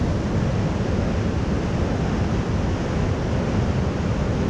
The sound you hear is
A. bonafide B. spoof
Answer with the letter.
A